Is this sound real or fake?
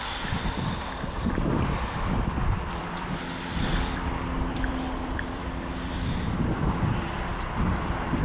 fake